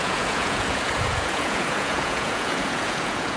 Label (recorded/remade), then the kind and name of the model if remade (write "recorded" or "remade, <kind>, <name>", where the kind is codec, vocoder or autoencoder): remade, vocoder, Vocos